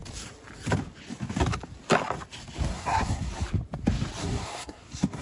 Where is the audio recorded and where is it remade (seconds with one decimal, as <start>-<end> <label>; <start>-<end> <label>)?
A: 0.0-2.7 recorded; 2.7-3.3 remade; 3.3-4.2 recorded; 4.2-5.2 remade

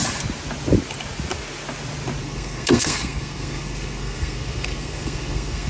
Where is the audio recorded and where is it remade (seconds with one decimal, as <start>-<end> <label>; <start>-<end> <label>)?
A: 0.0-2.2 recorded; 2.2-5.7 remade

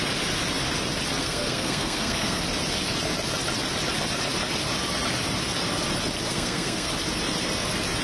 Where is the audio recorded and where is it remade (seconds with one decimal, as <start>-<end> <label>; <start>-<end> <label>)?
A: 0.0-1.2 recorded; 1.2-2.4 remade; 2.4-6.3 recorded; 6.3-6.9 remade; 6.9-8.0 recorded

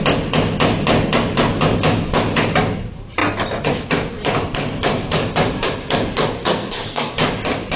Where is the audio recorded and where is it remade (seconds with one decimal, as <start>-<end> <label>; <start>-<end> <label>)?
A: 0.0-6.4 recorded; 6.4-7.1 remade; 7.1-7.8 recorded